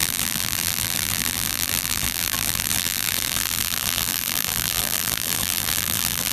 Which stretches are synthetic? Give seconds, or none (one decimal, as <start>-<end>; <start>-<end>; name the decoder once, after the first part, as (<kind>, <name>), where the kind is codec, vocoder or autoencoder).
0.0-6.3 (vocoder, BigVGAN v2)